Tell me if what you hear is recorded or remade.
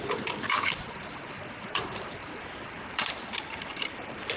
remade